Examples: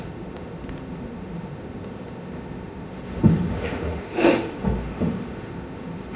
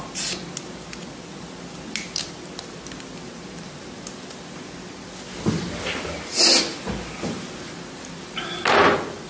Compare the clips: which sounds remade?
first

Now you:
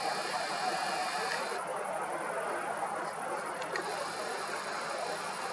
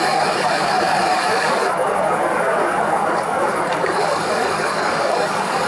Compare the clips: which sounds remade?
second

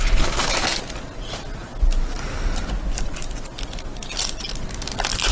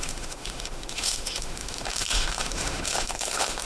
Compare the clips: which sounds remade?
second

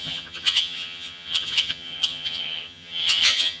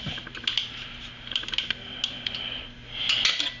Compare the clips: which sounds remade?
first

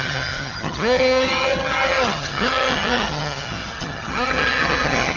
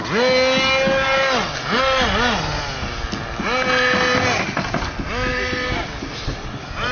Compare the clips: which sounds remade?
first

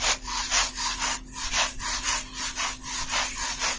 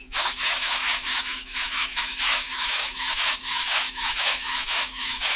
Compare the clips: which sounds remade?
second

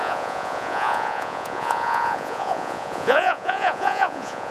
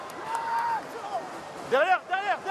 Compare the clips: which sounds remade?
first